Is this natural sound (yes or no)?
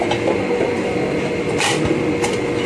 yes